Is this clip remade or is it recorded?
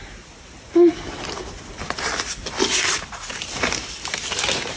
recorded